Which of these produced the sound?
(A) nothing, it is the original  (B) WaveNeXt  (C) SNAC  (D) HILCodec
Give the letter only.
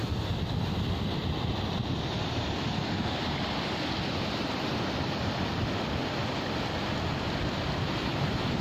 A